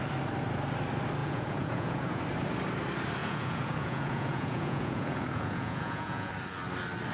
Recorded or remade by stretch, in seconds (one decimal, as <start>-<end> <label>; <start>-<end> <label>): 0.0-1.2 recorded; 1.2-2.2 remade; 2.2-3.2 recorded; 3.2-6.3 remade; 6.3-7.1 recorded